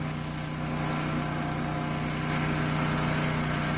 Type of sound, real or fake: real